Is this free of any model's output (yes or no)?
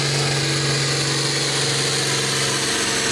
yes